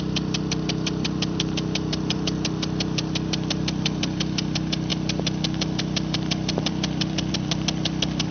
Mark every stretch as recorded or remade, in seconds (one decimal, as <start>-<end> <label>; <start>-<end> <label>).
0.0-8.3 remade